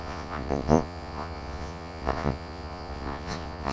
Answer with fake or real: fake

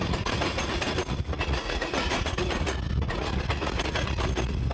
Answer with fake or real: fake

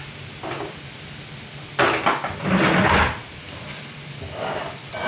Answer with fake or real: real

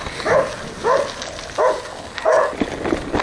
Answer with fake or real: real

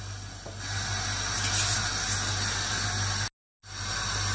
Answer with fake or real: real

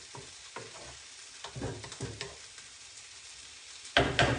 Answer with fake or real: real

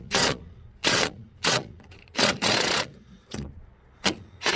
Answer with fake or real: fake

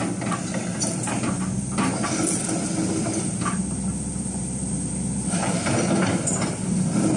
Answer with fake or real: real